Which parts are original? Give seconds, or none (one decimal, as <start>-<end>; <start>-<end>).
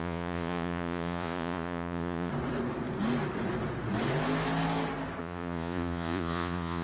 2.3-5.2